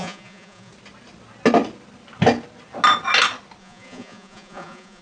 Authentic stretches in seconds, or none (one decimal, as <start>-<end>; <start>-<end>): 0.7-3.6